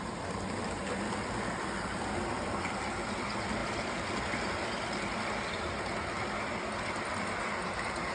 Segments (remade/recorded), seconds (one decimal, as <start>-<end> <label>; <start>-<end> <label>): 0.0-8.1 recorded